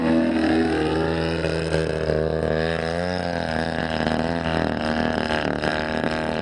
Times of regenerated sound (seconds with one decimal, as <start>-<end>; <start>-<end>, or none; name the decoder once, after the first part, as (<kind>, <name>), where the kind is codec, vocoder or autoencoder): 5.7-6.4 (vocoder, BigVGAN v2)